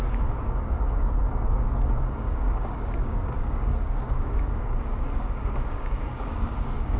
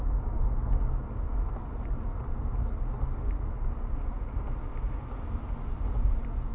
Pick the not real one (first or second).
first